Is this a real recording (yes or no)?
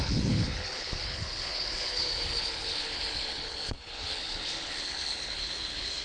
no